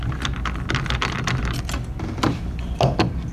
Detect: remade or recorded recorded